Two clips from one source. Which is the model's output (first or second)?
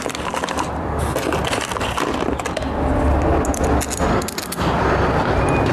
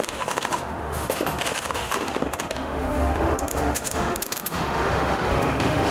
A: second